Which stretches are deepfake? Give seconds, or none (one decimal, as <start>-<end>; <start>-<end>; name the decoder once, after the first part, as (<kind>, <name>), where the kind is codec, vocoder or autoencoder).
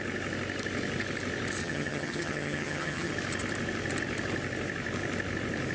1.6-3.1 (vocoder, HiFi-GAN)